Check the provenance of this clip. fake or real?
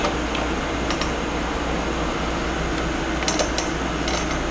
real